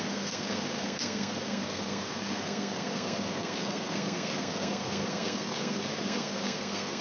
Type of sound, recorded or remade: remade